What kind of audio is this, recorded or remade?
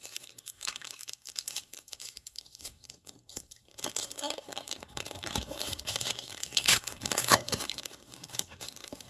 remade